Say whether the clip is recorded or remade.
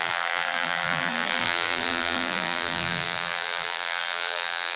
remade